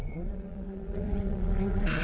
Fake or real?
fake